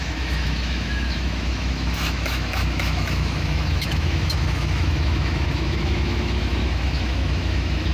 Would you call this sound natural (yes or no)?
no